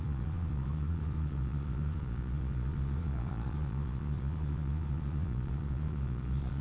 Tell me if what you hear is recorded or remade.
remade